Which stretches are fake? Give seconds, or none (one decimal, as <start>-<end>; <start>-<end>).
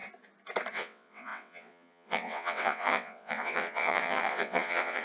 0.7-5.0